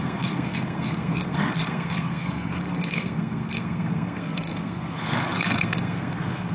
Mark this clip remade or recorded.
remade